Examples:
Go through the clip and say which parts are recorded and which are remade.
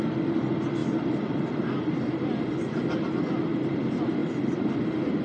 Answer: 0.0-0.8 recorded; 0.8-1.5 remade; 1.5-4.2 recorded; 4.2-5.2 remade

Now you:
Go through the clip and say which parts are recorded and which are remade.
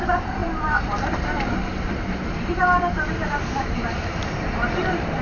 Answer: 0.0-5.2 remade